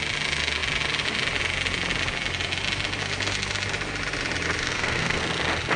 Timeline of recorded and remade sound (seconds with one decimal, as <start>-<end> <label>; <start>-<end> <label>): 0.0-4.6 recorded; 4.6-5.2 remade; 5.2-5.8 recorded